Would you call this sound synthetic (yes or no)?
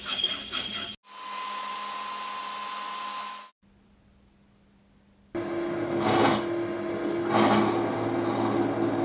no